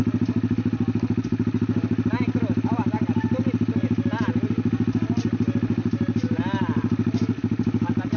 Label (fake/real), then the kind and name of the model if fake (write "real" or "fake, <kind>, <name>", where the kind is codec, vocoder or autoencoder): real